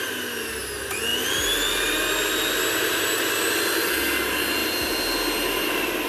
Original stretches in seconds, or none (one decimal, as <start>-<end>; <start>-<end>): 0.0-4.6